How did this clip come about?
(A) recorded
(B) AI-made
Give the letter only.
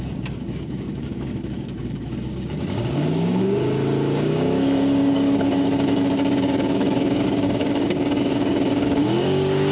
B